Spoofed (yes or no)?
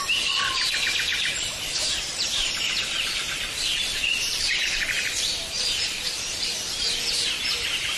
yes